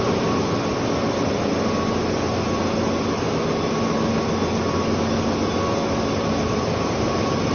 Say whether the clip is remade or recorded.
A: recorded